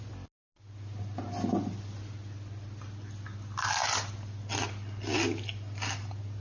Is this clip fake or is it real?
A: real